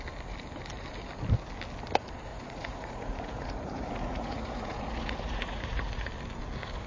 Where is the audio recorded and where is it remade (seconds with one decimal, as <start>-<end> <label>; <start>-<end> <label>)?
0.0-2.3 recorded; 2.3-6.1 remade; 6.1-6.9 recorded